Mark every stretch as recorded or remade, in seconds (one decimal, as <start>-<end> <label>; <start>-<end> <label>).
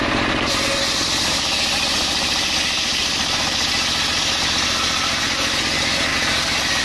0.0-6.8 recorded